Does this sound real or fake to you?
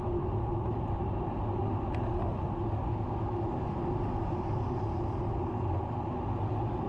real